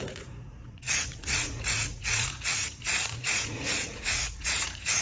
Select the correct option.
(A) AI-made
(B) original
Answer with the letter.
A